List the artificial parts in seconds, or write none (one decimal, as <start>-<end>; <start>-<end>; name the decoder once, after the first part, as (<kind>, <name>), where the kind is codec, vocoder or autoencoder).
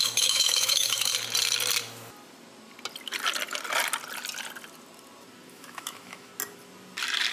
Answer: 0.0-1.1 (autoencoder, DAC-VAE); 5.5-6.3